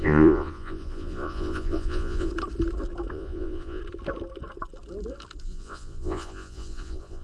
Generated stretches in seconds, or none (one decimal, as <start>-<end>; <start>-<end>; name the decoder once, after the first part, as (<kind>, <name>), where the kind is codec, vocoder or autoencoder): 0.0-2.3 (vocoder, Vocos); 3.1-3.8; 5.4-7.2